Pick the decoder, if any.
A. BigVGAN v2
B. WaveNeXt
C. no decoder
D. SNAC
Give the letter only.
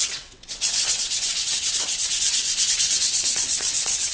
B